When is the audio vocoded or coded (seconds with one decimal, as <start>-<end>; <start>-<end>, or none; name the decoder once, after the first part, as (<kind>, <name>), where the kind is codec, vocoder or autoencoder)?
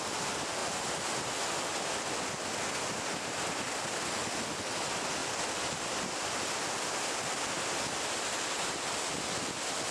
none